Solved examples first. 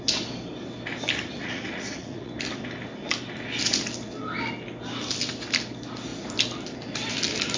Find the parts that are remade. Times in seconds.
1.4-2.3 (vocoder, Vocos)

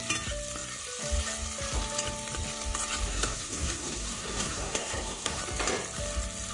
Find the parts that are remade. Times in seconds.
3.1-5.4 (codec, SNAC)

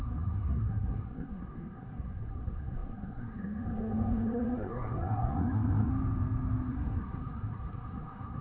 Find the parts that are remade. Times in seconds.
0.0-5.9 (codec, SNAC); 6.7-8.4